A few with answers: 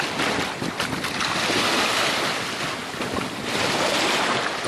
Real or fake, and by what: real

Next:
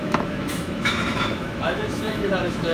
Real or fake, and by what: fake, autoencoder, DAC-VAE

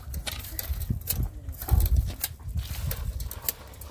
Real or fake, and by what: real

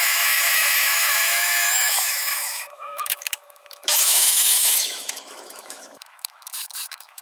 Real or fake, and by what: fake, autoencoder, DAC-VAE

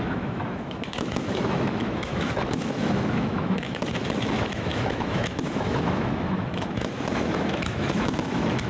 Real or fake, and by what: fake, autoencoder, DAC-VAE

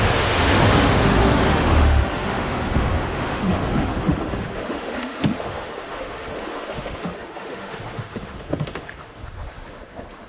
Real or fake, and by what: fake, autoencoder, DAC-VAE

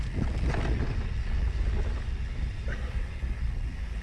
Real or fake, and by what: real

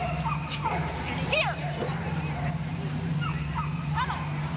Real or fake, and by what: real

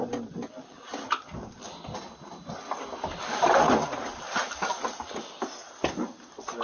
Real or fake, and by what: real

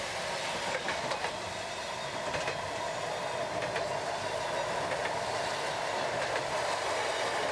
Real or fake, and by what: real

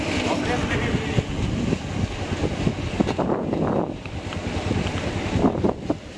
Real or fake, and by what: real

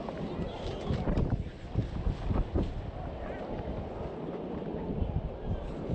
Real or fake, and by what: real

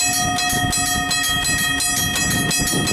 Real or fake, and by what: real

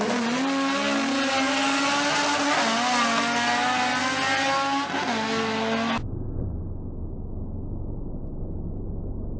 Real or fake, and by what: real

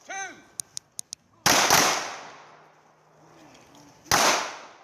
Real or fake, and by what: real